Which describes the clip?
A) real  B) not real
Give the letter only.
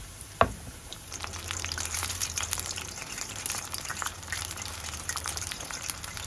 B